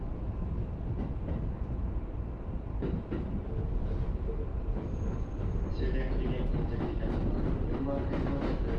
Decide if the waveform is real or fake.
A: real